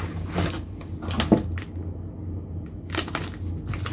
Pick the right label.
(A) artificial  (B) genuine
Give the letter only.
B